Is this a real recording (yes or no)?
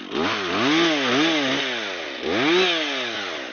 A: yes